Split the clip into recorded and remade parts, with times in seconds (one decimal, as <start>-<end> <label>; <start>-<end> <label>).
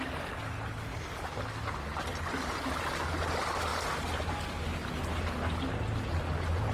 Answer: 0.0-0.9 recorded; 0.9-1.4 remade; 1.4-1.9 recorded; 1.9-2.6 remade; 2.6-6.7 recorded